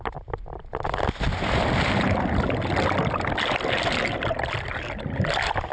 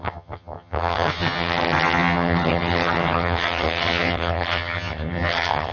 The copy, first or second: second